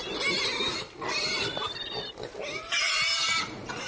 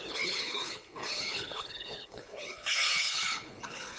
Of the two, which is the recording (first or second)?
first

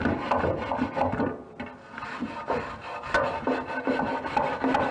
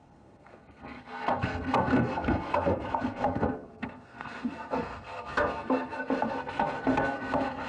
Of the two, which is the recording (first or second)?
first